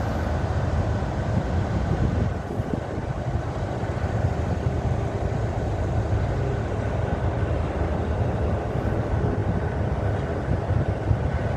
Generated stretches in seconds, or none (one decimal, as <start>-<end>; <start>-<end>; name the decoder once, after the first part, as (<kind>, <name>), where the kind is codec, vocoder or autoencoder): none

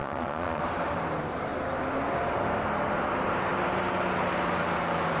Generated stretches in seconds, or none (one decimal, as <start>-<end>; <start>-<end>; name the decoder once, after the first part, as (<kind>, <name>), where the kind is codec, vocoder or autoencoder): 0.0-0.6 (vocoder, Vocos)

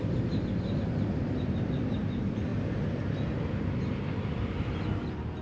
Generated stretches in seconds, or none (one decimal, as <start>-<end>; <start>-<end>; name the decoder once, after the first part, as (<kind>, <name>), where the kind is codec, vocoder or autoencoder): none

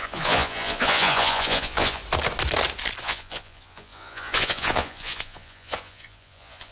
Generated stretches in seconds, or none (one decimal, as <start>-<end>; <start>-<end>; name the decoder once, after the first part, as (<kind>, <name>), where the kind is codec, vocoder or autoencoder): 0.0-2.0 (vocoder, Vocos); 3.0-6.7